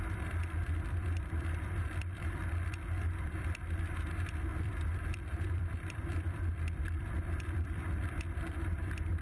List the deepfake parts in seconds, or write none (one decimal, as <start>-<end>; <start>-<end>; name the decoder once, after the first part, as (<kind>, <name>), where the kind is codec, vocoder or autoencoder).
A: 0.0-9.2 (vocoder, BigVGAN v2)